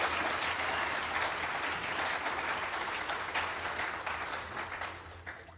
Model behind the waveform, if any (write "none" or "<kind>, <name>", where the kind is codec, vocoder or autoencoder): none